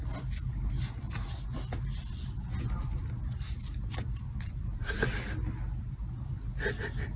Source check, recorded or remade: recorded